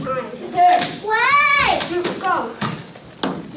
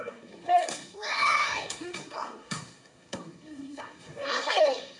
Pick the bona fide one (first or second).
first